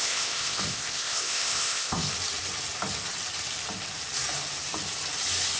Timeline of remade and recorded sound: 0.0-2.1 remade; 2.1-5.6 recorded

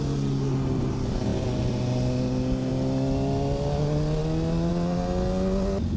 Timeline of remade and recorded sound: 0.0-6.0 recorded